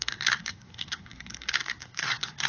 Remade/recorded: remade